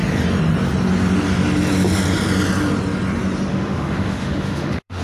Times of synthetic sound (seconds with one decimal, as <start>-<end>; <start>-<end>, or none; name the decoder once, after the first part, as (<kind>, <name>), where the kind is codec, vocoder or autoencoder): 3.5-5.0 (autoencoder, DAC-VAE)